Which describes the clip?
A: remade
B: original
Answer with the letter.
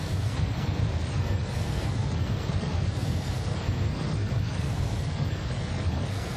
A